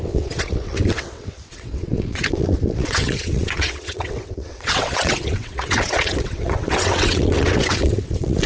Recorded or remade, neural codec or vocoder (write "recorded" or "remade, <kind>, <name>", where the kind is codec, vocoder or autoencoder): remade, vocoder, WaveNeXt